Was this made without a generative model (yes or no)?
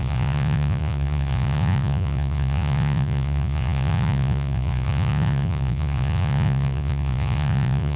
no